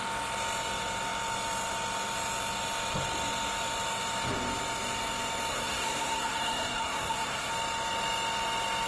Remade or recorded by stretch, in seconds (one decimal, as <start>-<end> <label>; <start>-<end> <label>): 0.0-5.5 recorded; 5.5-7.5 remade; 7.5-8.9 recorded